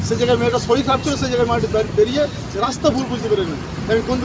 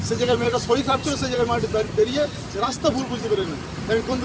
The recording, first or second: first